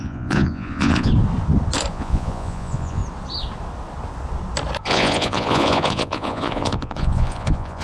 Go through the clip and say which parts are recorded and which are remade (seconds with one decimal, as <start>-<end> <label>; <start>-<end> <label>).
0.0-1.1 remade; 1.1-1.9 recorded; 1.9-3.0 remade; 3.0-4.8 recorded; 4.8-7.8 remade